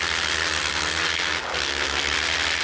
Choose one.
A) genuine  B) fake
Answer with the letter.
A